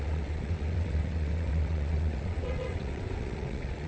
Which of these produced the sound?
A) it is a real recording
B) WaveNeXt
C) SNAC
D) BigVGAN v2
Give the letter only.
B